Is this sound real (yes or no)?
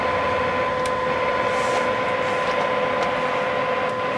yes